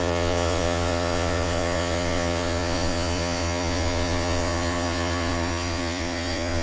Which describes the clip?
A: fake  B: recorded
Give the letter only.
A